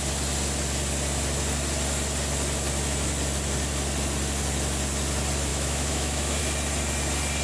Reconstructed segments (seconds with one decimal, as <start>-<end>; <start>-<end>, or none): 5.5-6.4